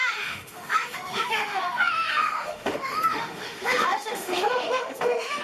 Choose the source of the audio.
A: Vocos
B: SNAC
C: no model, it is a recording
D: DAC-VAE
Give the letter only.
D